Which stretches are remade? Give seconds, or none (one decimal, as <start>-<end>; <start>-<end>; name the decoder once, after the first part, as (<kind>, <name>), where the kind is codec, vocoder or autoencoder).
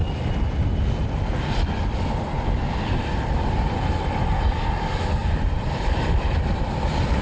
5.2-6.2 (vocoder, BigVGAN v2)